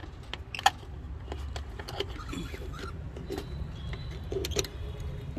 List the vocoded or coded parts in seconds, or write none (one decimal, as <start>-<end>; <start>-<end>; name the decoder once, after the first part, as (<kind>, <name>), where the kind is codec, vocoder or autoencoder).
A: none